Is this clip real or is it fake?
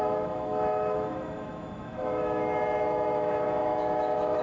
fake